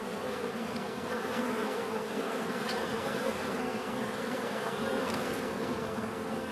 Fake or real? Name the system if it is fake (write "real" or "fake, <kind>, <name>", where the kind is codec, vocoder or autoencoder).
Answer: fake, codec, SNAC